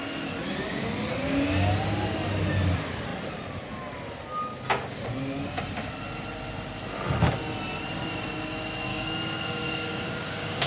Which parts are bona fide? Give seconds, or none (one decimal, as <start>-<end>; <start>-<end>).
0.0-8.9